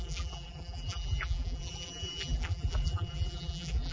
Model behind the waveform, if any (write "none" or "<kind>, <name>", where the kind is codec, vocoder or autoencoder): vocoder, BigVGAN v2